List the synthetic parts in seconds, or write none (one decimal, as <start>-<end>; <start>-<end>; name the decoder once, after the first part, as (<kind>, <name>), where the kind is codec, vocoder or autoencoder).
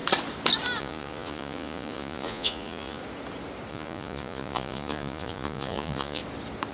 0.8-3.0 (vocoder, Vocos); 3.7-6.2